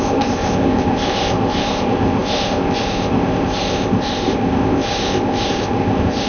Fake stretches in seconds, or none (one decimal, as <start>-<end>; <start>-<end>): 0.0-6.3